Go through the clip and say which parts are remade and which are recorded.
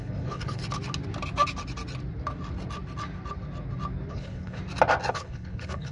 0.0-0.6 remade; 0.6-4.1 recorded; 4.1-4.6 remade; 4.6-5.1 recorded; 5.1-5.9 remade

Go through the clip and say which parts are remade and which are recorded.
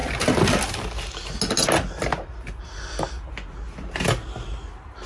0.0-5.1 recorded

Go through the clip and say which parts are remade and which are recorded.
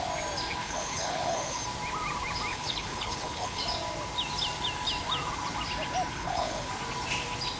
0.0-0.6 recorded; 0.6-1.6 remade; 1.6-2.5 recorded; 2.5-3.6 remade; 3.6-6.1 recorded; 6.1-6.7 remade; 6.7-7.6 recorded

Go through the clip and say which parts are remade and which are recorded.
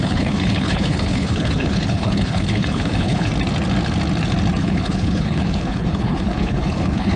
0.0-3.3 remade; 3.3-4.6 recorded; 4.6-7.2 remade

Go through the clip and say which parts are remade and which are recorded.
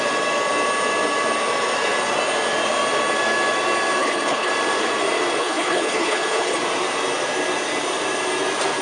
0.0-4.0 recorded; 4.0-4.5 remade; 4.5-5.4 recorded; 5.4-6.6 remade; 6.6-8.8 recorded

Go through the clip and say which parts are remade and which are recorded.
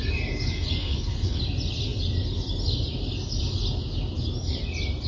0.0-0.8 recorded; 0.8-1.4 remade; 1.4-5.1 recorded